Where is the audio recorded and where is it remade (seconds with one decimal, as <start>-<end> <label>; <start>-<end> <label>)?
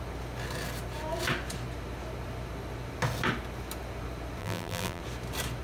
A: 0.0-4.4 recorded; 4.4-5.0 remade; 5.0-5.6 recorded